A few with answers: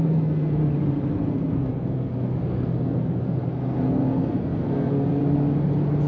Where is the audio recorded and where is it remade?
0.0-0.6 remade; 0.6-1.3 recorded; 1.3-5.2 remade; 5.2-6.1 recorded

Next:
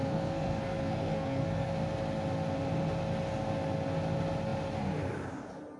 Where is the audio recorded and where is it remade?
0.0-1.7 remade; 1.7-5.8 recorded

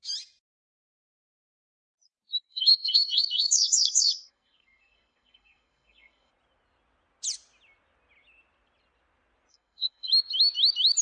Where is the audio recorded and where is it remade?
0.0-2.5 recorded; 2.5-6.3 remade; 6.3-9.5 recorded; 9.5-10.1 remade; 10.1-11.0 recorded

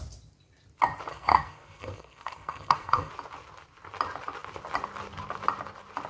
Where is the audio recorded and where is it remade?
0.0-1.1 recorded; 1.1-3.1 remade; 3.1-6.1 recorded

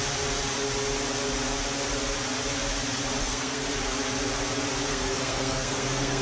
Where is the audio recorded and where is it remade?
0.0-3.2 recorded; 3.2-3.7 remade; 3.7-4.9 recorded; 4.9-6.2 remade